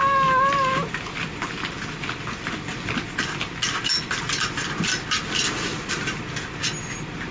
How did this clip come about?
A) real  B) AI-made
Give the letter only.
A